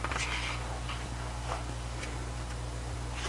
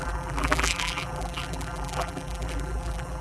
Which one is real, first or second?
first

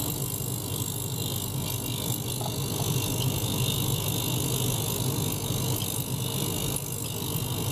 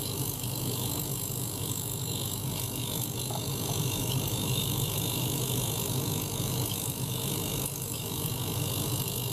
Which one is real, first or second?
first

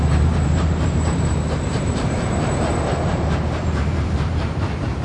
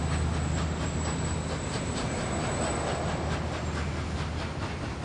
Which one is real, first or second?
second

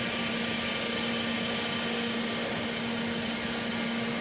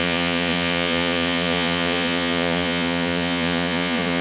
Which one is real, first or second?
first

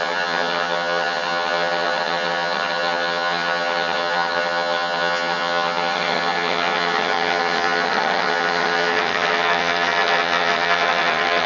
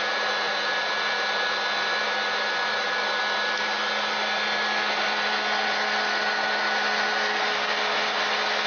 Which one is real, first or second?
second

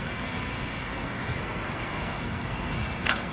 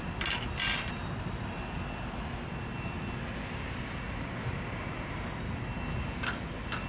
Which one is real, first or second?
second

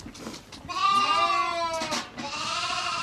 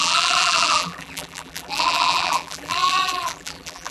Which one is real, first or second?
first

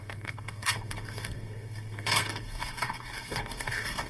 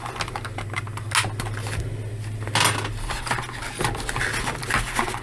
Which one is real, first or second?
second